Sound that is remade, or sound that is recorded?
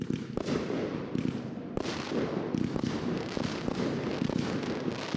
recorded